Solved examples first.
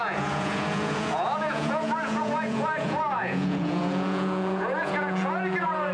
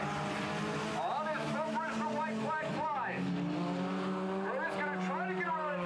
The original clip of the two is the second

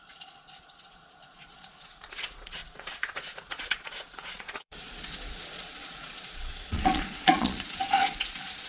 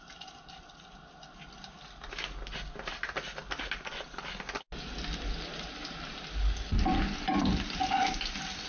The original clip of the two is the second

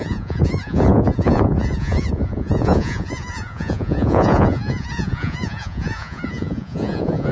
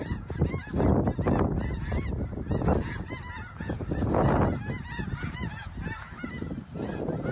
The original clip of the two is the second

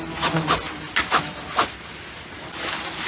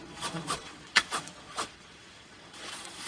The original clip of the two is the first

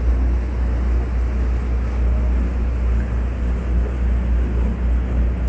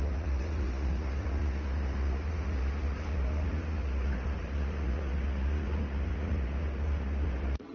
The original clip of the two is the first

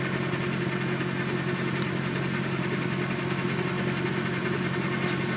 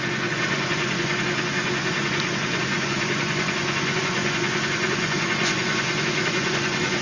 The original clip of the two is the first